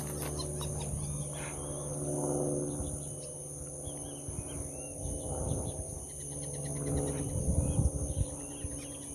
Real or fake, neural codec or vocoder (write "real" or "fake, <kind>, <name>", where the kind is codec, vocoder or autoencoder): real